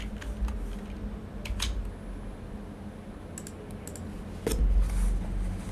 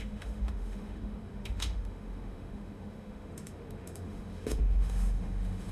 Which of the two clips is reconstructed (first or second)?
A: second